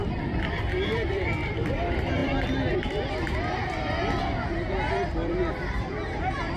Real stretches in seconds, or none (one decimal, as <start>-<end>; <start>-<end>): 1.5-6.6